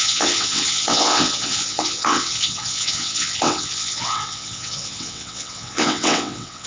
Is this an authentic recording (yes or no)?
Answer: no